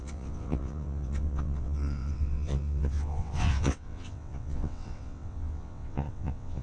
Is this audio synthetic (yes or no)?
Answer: yes